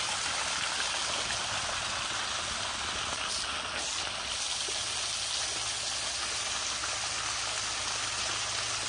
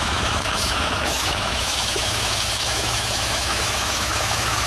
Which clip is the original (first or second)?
first